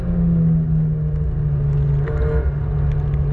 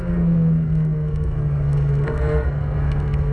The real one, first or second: first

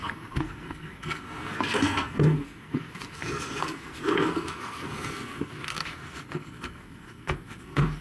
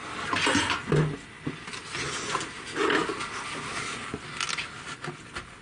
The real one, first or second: second